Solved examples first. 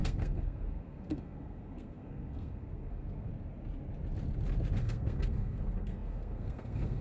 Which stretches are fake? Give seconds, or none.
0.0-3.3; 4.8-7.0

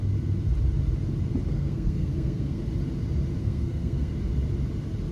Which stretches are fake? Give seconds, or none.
1.5-2.6; 3.4-4.1

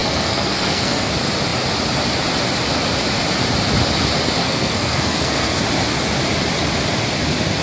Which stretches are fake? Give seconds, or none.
0.0-1.1; 4.4-5.6

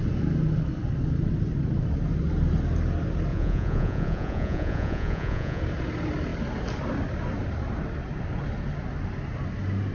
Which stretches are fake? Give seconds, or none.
3.3-5.6

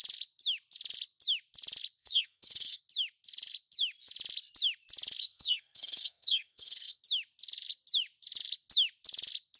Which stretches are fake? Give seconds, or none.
2.0-2.8; 5.2-7.0